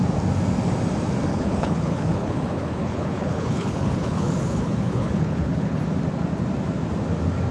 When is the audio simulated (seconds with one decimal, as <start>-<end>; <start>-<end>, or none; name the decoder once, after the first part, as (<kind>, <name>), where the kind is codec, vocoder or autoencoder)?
1.3-5.8 (codec, HILCodec)